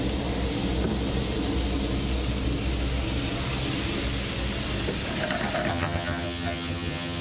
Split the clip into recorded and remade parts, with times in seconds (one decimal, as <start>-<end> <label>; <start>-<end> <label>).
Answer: 0.0-5.7 recorded; 5.7-7.2 remade